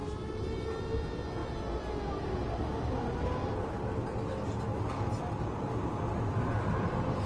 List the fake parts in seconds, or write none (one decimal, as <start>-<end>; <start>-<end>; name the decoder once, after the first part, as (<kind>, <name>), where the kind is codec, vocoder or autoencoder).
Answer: none

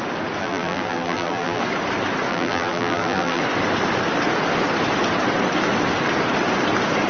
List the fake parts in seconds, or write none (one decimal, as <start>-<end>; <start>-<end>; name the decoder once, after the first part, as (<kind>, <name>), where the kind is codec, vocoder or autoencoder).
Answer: 0.4-1.6 (vocoder, BigVGAN v2); 2.3-3.4